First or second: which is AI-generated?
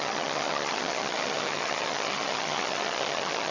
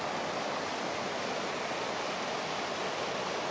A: first